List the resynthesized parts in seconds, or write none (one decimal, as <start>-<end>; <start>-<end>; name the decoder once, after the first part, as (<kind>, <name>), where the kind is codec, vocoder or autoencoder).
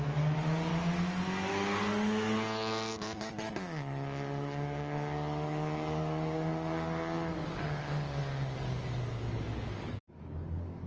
0.0-0.7 (codec, DAC); 1.5-10.9